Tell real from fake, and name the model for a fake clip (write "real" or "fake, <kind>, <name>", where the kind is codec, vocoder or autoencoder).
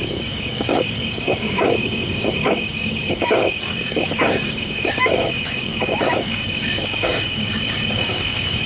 fake, codec, DAC